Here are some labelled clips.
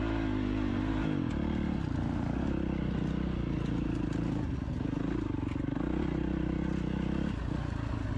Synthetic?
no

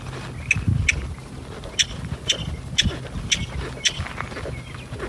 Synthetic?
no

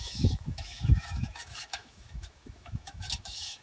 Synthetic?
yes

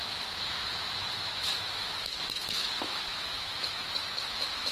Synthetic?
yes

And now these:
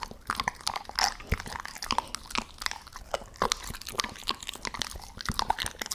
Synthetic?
no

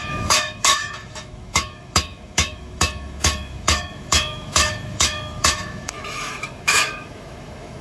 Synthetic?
yes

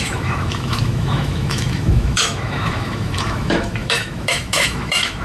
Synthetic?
yes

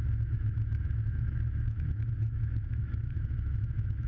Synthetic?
yes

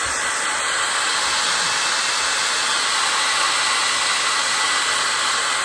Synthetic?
no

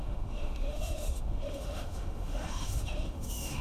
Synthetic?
yes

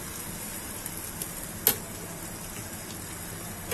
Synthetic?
no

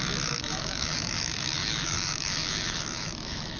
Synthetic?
yes